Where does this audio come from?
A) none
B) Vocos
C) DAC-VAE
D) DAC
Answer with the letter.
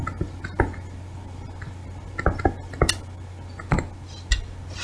A